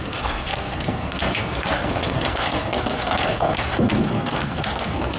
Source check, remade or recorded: remade